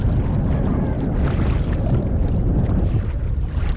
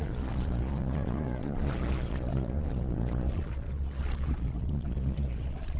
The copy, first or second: second